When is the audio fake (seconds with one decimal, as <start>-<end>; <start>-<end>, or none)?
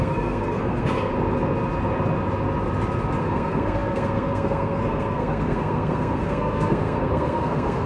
0.0-1.1; 3.2-7.9